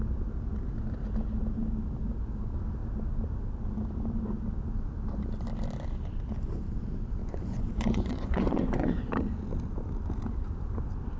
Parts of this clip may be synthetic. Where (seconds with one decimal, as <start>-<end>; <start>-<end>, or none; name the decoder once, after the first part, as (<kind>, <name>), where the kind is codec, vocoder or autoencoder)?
7.2-9.1 (vocoder, Vocos)